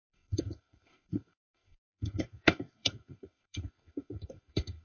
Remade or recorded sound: remade